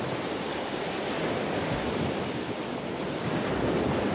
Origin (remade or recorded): recorded